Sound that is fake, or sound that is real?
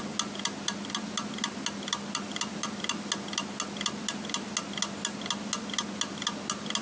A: real